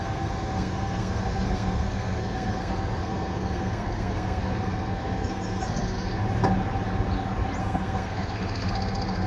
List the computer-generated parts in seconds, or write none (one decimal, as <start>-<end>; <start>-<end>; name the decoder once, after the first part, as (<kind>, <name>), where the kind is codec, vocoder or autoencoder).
0.0-6.2 (codec, SNAC); 7.6-9.3